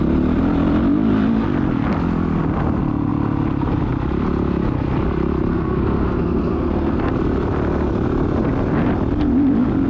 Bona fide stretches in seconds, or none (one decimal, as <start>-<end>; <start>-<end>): 0.0-5.5; 7.0-9.9